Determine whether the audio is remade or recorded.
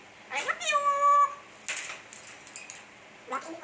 recorded